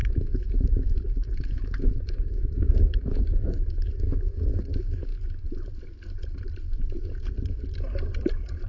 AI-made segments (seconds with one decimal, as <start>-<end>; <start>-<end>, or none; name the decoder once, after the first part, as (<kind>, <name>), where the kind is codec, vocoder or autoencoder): 0.0-5.1 (autoencoder, DAC-VAE)